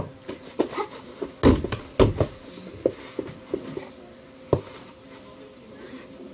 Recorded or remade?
recorded